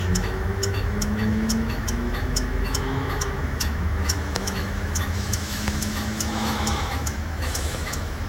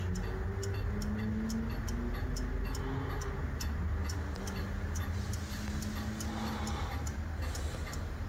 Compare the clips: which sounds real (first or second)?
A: second